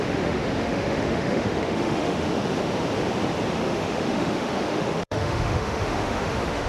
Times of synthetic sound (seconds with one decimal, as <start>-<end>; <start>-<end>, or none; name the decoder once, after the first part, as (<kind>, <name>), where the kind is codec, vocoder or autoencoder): 0.0-2.5 (autoencoder, DAC-VAE); 3.5-6.7